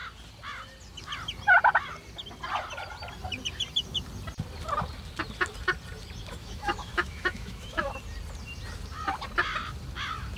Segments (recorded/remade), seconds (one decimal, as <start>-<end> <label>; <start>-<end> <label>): 0.0-6.4 recorded; 6.4-7.9 remade; 7.9-10.4 recorded